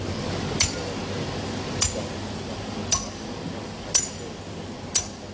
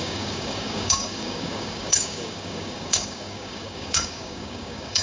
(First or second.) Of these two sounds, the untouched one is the first